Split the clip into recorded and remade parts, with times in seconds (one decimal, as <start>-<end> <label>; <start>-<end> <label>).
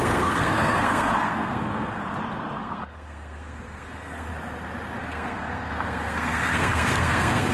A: 0.0-2.0 remade; 2.0-2.6 recorded; 2.6-4.3 remade; 4.3-5.0 recorded; 5.0-7.5 remade